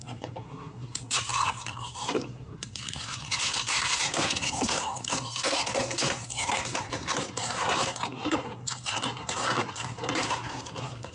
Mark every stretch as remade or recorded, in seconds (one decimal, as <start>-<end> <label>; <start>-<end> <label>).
0.0-11.1 remade